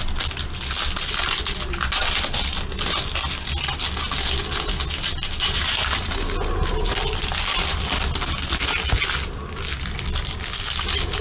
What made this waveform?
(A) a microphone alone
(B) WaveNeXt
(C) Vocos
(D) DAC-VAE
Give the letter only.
A